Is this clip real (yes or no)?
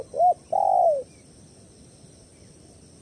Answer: yes